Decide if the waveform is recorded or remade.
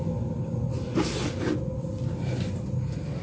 recorded